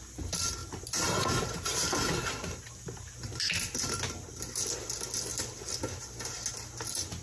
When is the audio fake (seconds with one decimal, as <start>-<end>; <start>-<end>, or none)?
none